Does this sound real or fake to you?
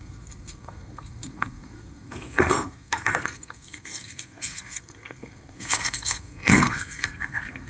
fake